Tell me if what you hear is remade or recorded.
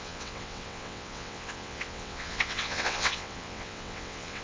remade